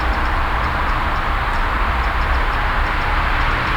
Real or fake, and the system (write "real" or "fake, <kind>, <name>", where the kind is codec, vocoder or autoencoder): fake, vocoder, BigVGAN v2